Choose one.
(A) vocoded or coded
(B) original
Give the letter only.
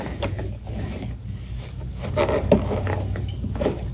A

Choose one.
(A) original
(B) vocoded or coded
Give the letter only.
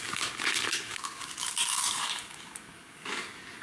B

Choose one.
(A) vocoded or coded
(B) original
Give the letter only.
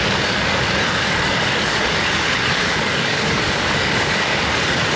A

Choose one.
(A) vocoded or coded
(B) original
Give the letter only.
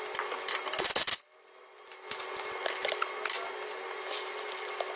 B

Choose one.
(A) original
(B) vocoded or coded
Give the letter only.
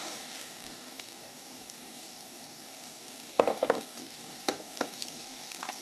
B